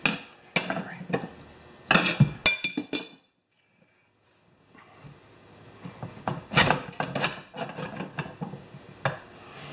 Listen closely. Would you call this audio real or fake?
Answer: real